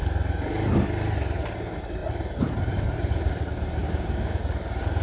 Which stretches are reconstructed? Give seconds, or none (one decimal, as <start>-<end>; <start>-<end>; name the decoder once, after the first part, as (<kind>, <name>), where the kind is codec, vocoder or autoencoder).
3.8-4.4 (codec, DAC)